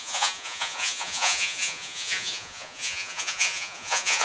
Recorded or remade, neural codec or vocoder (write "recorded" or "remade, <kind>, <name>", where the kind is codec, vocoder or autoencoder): remade, vocoder, Vocos